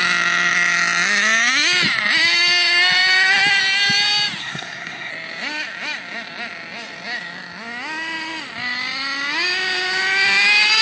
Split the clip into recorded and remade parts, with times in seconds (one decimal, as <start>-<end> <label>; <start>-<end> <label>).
0.0-4.4 recorded; 4.4-5.1 remade; 5.1-10.8 recorded